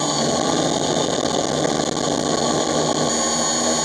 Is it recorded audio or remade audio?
recorded